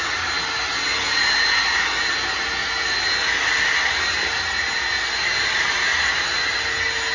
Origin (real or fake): real